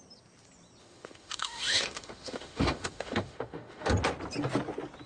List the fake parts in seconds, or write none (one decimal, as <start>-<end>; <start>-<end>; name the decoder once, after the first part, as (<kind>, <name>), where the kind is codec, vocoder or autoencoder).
0.8-3.9 (autoencoder, DAC-VAE)